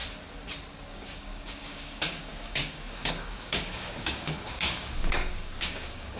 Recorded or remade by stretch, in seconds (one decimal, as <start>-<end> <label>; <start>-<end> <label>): 0.0-0.9 recorded; 0.9-6.2 remade

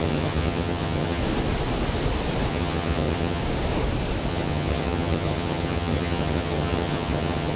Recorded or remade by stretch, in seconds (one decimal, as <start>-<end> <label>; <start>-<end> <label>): 0.0-1.2 remade; 1.2-2.5 recorded; 2.5-3.4 remade; 3.4-4.3 recorded; 4.3-7.6 remade

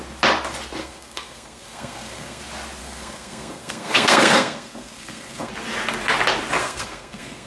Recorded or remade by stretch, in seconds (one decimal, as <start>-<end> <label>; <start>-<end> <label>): 0.0-0.8 recorded; 0.8-2.4 remade; 2.4-2.8 recorded; 2.8-5.5 remade; 5.5-6.6 recorded; 6.6-7.5 remade

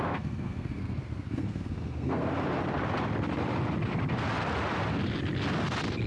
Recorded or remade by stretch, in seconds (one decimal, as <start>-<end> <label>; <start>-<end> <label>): 0.0-2.3 remade; 2.3-6.1 recorded

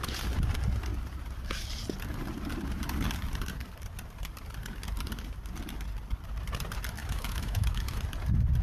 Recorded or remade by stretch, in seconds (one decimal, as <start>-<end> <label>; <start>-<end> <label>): 0.0-7.0 recorded; 7.0-8.0 remade; 8.0-8.6 recorded